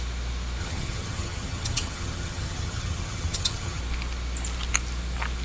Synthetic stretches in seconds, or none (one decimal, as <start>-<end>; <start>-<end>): 0.6-3.8